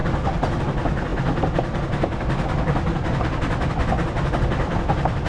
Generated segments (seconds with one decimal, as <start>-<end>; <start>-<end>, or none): none

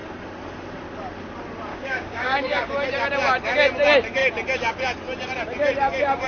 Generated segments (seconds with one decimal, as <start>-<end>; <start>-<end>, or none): 1.7-2.7

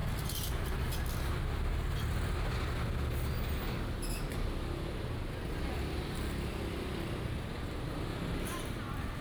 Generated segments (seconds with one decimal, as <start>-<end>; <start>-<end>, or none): none

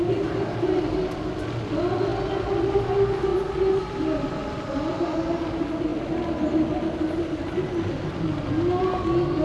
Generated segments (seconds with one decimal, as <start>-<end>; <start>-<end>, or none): none